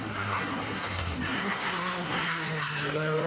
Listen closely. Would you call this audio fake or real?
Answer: fake